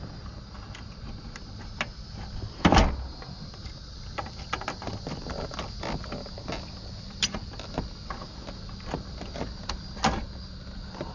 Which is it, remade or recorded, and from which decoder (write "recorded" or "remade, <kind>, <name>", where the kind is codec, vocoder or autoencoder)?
recorded